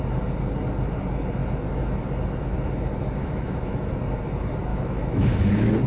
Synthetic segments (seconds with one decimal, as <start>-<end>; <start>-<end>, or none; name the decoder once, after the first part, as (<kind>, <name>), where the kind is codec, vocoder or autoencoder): 3.2-3.9 (autoencoder, DAC-VAE); 4.7-5.5